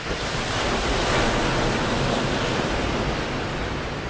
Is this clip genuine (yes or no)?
yes